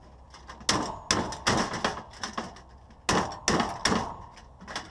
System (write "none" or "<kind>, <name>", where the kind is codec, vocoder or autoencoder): none